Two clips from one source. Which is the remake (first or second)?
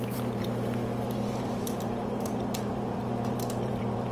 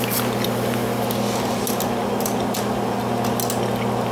first